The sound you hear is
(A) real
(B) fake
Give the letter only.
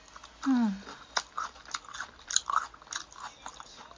A